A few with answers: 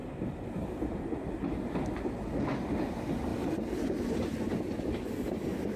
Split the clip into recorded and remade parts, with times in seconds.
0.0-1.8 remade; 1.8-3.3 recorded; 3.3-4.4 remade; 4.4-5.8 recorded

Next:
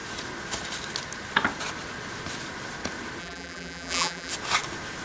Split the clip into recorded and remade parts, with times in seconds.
0.0-3.2 recorded; 3.2-4.3 remade; 4.3-5.0 recorded

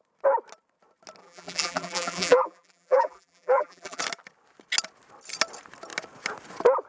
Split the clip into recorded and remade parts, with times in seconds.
0.0-1.2 recorded; 1.2-4.0 remade; 4.0-6.9 recorded